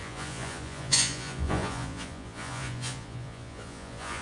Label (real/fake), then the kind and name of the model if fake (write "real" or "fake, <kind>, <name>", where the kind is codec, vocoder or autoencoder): fake, vocoder, Vocos